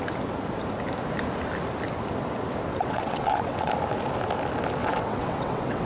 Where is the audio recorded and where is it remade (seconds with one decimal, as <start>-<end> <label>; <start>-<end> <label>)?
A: 0.0-2.7 recorded; 2.7-3.7 remade; 3.7-4.8 recorded; 4.8-5.9 remade

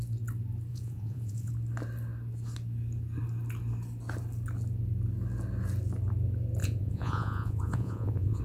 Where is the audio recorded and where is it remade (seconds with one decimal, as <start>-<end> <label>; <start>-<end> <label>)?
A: 0.0-0.7 recorded; 0.7-1.5 remade; 1.5-6.6 recorded; 6.6-8.4 remade

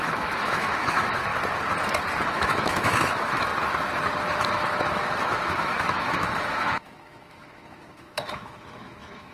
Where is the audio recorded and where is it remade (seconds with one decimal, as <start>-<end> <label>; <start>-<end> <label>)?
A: 0.0-1.3 remade; 1.3-2.3 recorded; 2.3-3.5 remade; 3.5-4.5 recorded; 4.5-9.3 remade

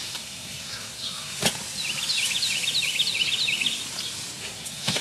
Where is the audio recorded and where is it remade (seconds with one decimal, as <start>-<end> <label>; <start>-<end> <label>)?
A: 0.0-1.4 remade; 1.4-4.4 recorded; 4.4-5.0 remade

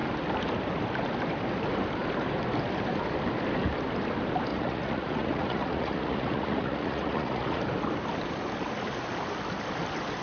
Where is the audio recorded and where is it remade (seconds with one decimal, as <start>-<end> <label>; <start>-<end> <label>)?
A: 0.0-4.5 recorded; 4.5-7.6 remade; 7.6-10.2 recorded